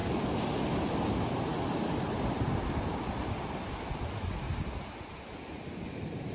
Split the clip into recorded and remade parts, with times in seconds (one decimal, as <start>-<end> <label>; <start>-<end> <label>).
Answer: 0.0-0.7 recorded; 0.7-1.5 remade; 1.5-5.1 recorded; 5.1-6.3 remade